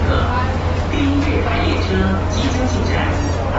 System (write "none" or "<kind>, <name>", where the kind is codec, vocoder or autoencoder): none